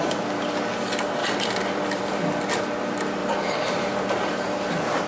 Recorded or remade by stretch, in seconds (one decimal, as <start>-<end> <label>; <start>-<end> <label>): 0.0-1.2 recorded; 1.2-2.2 remade; 2.2-3.2 recorded; 3.2-4.1 remade; 4.1-5.1 recorded

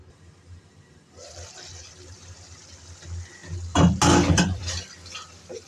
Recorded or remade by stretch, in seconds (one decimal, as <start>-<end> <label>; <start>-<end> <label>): 0.0-3.4 remade; 3.4-4.3 recorded; 4.3-5.7 remade

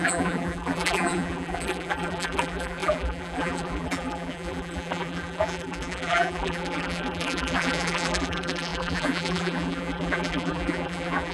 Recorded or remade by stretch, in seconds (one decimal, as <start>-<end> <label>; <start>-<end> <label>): 0.0-11.3 remade